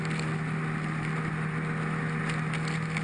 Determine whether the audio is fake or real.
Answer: real